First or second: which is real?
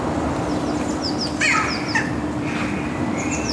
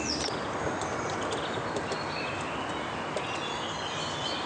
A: second